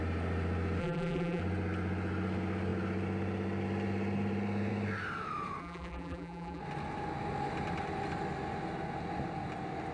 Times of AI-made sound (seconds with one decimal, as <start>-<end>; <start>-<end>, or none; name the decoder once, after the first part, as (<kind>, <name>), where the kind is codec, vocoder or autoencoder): 0.8-1.4 (vocoder, BigVGAN v2); 5.6-6.6